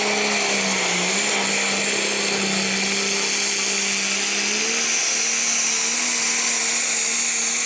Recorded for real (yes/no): yes